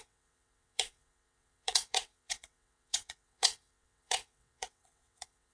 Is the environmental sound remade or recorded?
remade